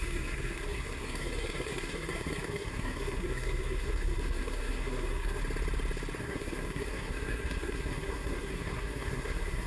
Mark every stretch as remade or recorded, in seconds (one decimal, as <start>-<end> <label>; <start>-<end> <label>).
0.0-5.4 remade; 5.4-6.2 recorded; 6.2-9.7 remade